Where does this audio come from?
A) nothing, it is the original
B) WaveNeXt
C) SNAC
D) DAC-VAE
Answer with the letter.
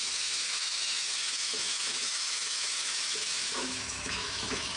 D